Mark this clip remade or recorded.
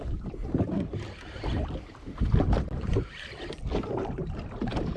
recorded